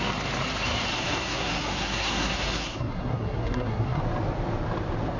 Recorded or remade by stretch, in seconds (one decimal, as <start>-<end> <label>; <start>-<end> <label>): 0.0-0.9 recorded; 0.9-4.0 remade; 4.0-5.2 recorded